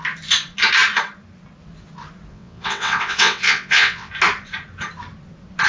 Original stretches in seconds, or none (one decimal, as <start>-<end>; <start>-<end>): 0.0-2.3; 4.1-5.7